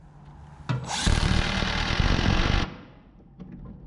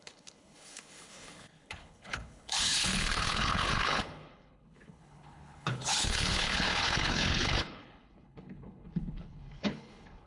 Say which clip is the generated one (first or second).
second